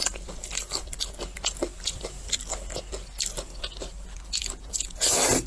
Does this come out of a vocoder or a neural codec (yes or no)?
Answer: no